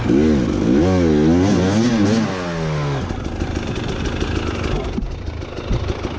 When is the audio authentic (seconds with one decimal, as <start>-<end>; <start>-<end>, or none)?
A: 0.0-6.2